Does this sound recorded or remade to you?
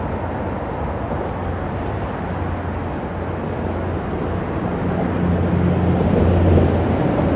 recorded